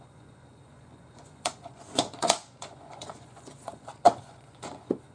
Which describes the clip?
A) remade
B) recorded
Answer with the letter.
A